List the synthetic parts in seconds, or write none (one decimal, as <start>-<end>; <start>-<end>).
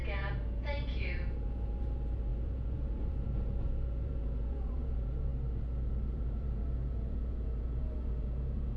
0.0-5.3; 6.1-8.8